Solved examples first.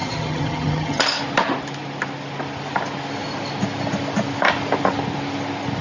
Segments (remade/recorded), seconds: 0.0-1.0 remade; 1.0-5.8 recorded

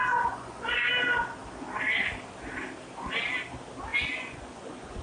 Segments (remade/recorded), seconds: 0.0-0.9 remade; 0.9-3.9 recorded; 3.9-5.0 remade

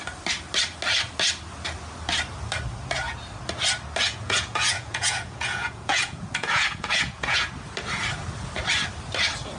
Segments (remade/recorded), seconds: 0.0-4.0 recorded; 4.0-7.5 remade; 7.5-9.6 recorded

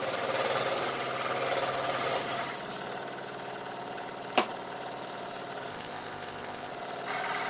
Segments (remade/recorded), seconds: 0.0-5.7 recorded; 5.7-6.7 remade; 6.7-7.5 recorded

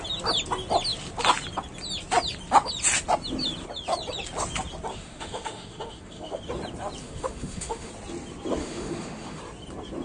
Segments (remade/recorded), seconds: 0.0-4.9 recorded; 4.9-6.4 remade; 6.4-7.0 recorded; 7.0-7.9 remade; 7.9-8.6 recorded; 8.6-9.4 remade; 9.4-10.0 recorded

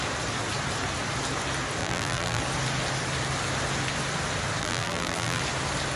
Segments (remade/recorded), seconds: 0.0-1.8 recorded; 1.8-2.4 remade; 2.4-4.6 recorded; 4.6-5.4 remade; 5.4-6.0 recorded

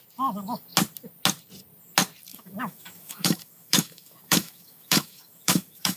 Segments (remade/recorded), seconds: 0.0-2.3 recorded; 2.3-6.0 remade

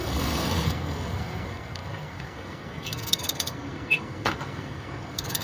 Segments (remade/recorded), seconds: 0.0-5.4 remade